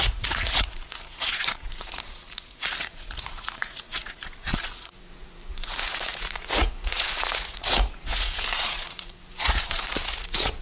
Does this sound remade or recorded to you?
remade